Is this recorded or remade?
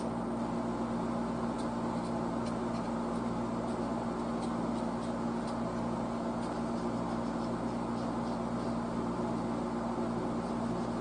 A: recorded